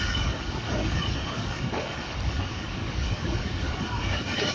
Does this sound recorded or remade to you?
remade